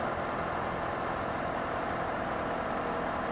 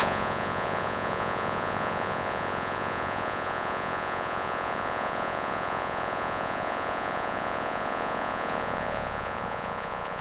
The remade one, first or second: second